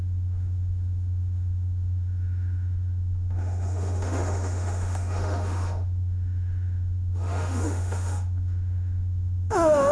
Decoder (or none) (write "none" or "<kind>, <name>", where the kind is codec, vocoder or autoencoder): autoencoder, DAC-VAE